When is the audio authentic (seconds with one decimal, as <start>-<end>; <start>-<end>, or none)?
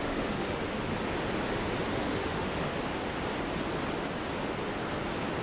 0.9-1.9; 2.8-5.4